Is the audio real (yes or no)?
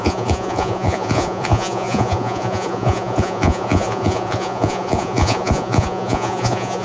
no